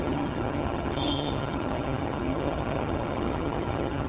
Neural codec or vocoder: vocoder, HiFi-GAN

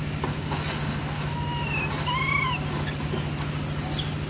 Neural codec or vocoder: none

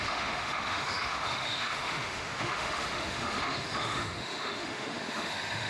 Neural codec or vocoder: autoencoder, DAC-VAE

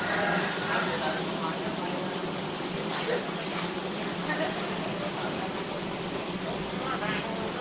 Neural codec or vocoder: none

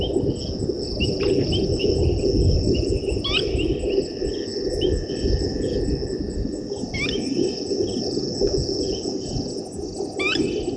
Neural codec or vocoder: none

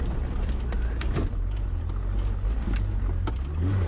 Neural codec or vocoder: none